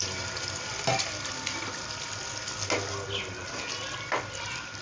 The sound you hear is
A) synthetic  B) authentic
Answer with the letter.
B